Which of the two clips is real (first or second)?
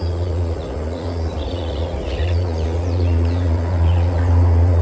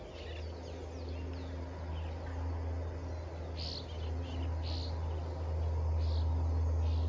second